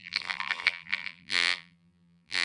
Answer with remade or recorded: remade